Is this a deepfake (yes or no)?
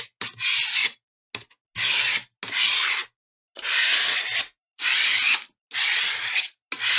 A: no